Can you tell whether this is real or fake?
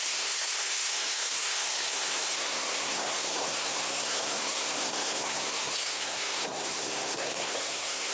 fake